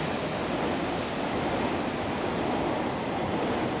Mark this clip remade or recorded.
recorded